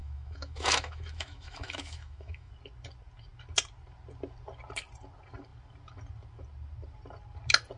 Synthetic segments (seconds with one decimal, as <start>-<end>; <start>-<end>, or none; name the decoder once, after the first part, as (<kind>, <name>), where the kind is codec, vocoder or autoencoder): 0.0-2.5 (autoencoder, DAC-VAE)